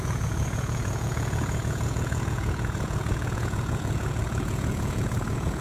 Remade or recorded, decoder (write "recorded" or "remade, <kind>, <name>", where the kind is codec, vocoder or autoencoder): remade, vocoder, Vocos